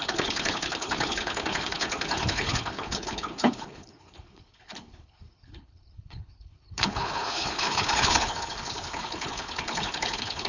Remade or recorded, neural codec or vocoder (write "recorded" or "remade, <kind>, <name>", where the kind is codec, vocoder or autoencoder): remade, codec, HILCodec